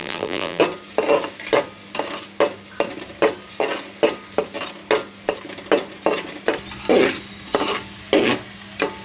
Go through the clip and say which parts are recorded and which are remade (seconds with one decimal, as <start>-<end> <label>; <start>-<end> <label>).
0.0-0.6 remade; 0.6-9.0 recorded